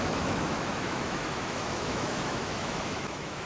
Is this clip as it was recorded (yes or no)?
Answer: no